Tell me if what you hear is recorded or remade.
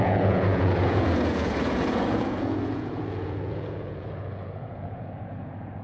remade